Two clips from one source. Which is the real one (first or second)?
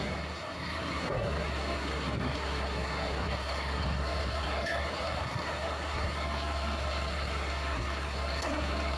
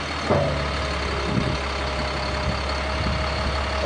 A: second